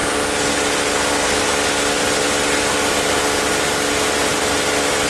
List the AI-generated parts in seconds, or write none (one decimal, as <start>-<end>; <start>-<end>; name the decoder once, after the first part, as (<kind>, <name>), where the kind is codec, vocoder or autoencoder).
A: none